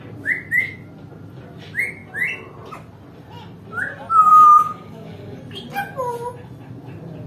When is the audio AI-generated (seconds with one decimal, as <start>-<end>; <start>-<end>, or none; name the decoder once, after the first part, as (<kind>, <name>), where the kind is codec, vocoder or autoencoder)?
4.3-5.4 (codec, DAC)